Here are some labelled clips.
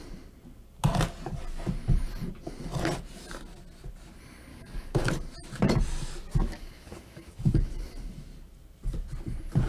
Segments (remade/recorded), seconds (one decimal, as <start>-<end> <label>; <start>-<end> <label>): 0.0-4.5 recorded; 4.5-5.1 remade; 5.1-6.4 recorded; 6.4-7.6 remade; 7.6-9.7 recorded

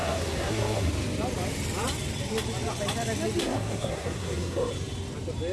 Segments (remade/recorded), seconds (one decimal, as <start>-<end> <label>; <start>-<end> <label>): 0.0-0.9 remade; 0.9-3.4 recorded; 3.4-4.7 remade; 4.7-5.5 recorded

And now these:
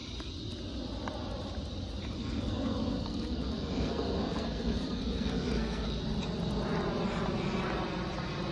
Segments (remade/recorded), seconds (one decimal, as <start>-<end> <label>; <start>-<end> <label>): 0.0-2.2 recorded; 2.2-6.0 remade; 6.0-8.5 recorded

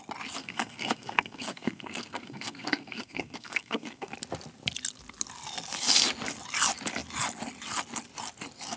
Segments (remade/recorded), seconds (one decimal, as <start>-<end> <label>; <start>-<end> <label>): 0.0-0.4 recorded; 0.4-4.1 remade; 4.1-8.8 recorded